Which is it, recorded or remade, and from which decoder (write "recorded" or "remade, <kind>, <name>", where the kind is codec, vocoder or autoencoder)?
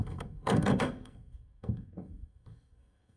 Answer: remade, codec, SNAC